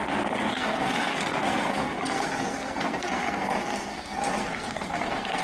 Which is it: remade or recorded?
remade